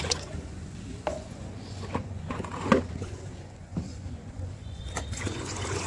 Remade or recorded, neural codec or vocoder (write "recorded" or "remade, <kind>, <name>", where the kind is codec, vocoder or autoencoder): remade, vocoder, Vocos